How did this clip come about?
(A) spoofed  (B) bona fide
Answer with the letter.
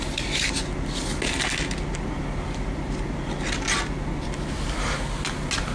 B